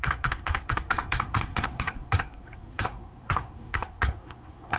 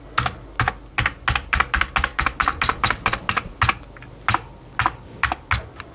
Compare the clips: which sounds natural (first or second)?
second